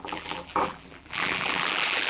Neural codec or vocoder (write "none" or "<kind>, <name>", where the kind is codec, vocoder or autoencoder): vocoder, BigVGAN v2